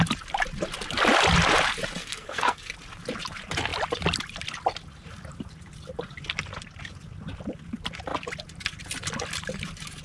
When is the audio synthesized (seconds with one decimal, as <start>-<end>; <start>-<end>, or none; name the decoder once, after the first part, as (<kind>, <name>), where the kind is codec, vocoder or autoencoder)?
2.0-2.7 (codec, SNAC)